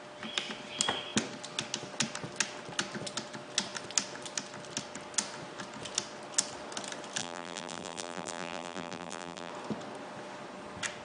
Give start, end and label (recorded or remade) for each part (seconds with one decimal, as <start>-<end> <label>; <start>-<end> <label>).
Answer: 0.0-7.2 recorded; 7.2-9.5 remade; 9.5-11.0 recorded